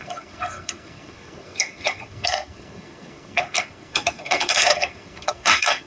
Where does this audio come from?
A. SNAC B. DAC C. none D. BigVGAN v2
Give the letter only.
A